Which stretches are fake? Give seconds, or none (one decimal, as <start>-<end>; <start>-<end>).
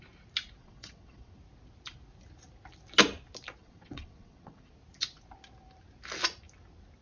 0.6-1.3; 3.6-4.7